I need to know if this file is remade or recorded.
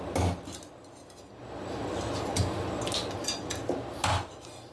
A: recorded